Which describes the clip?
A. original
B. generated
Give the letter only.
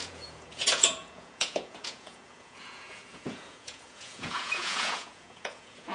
B